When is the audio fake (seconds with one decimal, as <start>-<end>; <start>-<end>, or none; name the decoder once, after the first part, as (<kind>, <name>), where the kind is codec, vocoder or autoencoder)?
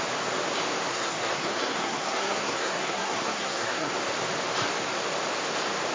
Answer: 0.9-3.9 (codec, SNAC)